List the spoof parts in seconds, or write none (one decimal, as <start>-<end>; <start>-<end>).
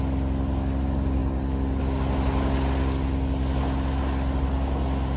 none